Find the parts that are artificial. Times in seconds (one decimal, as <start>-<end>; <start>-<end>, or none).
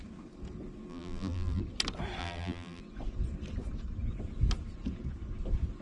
0.9-1.6; 2.2-2.8